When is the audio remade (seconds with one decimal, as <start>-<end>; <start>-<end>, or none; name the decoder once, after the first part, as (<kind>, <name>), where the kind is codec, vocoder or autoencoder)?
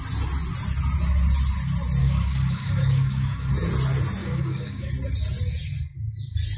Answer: 2.0-3.5 (codec, DAC); 4.2-4.9